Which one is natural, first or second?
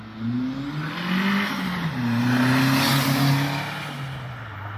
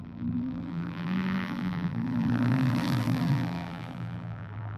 first